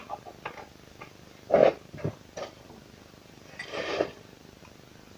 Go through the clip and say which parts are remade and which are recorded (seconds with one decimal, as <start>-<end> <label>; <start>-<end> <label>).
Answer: 0.0-1.6 recorded; 1.6-4.6 remade; 4.6-5.2 recorded